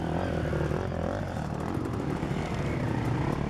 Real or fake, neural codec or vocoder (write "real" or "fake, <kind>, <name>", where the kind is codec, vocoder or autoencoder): real